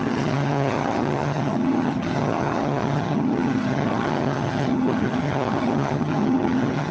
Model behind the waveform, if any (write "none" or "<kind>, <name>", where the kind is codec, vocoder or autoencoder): vocoder, HiFi-GAN